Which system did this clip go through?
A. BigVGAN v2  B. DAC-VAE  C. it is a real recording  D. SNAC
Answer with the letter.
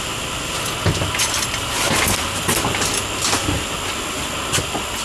C